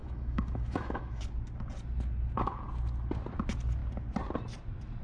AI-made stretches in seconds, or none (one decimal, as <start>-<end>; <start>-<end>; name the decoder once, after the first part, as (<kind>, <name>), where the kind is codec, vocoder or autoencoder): 0.0-1.2 (autoencoder, DAC-VAE)